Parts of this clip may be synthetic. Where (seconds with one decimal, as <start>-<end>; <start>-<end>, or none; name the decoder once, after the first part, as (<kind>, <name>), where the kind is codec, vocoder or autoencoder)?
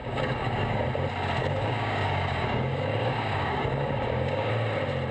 0.0-0.8 (codec, DAC); 1.4-4.5